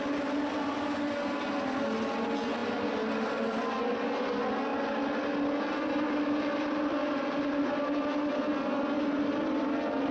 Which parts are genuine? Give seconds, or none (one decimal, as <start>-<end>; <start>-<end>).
0.0-10.1

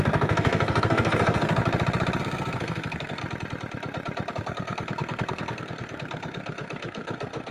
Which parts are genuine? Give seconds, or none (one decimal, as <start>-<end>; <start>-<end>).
1.6-2.2; 3.2-4.3

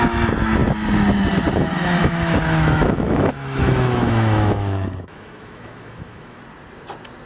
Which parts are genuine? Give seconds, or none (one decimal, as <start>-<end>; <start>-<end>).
0.0-2.0; 6.4-7.3

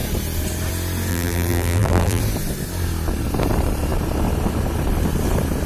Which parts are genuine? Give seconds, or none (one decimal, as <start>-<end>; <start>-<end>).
0.0-1.1; 2.2-5.7